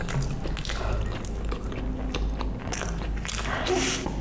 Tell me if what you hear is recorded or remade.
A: recorded